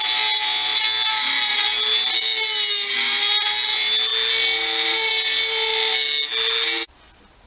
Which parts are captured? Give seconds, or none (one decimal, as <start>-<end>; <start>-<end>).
0.0-7.5